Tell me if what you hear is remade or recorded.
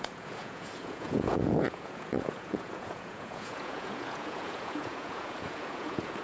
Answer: remade